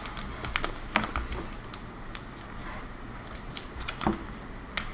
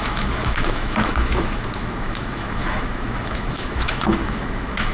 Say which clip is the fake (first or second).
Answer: second